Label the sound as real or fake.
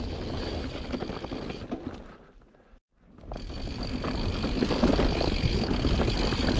real